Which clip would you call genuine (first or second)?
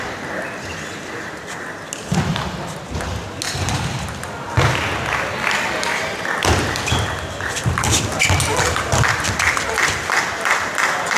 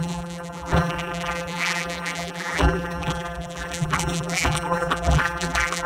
first